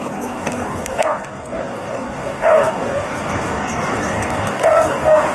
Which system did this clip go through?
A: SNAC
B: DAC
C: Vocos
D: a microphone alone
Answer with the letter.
B